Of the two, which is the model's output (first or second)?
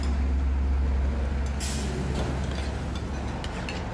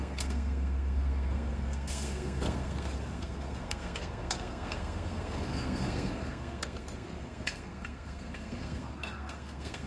second